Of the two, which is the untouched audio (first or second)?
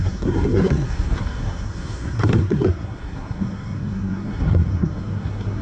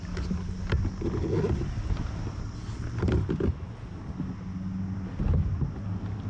second